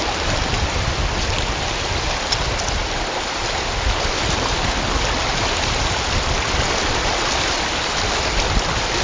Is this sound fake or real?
real